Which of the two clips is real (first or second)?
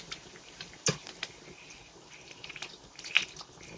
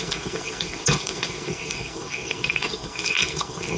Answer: first